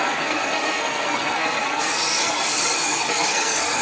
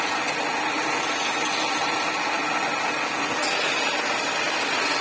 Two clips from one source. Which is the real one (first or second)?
second